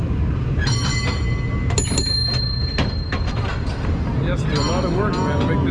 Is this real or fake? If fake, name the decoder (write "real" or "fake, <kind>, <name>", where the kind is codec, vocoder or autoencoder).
real